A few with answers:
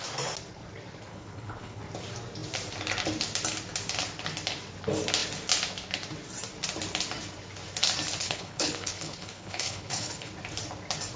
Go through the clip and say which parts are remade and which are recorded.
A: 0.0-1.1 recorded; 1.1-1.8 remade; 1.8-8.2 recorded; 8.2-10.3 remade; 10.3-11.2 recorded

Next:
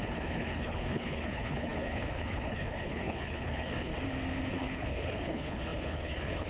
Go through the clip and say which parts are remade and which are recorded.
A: 0.0-3.9 remade; 3.9-4.5 recorded; 4.5-6.5 remade

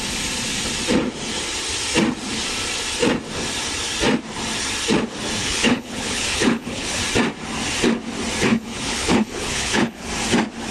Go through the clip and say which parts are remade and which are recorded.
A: 0.0-5.4 recorded; 5.4-7.0 remade; 7.0-8.5 recorded; 8.5-10.1 remade; 10.1-10.7 recorded